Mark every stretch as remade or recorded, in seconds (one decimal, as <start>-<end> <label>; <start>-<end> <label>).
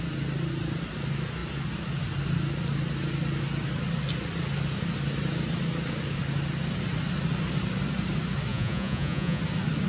0.0-8.5 recorded; 8.5-9.4 remade; 9.4-9.9 recorded